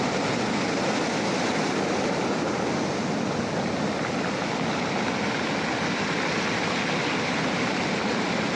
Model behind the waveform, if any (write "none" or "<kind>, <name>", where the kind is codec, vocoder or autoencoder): none